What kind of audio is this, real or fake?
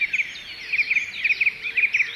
real